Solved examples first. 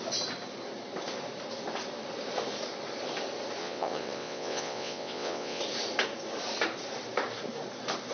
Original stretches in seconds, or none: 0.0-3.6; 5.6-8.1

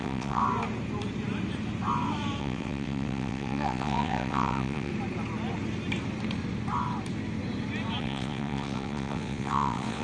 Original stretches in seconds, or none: 0.4-2.4; 4.9-8.0